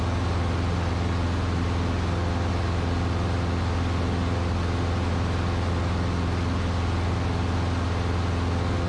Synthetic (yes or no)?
no